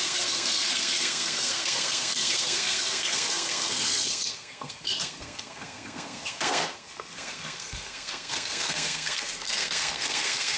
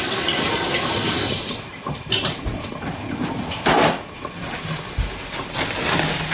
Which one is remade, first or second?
first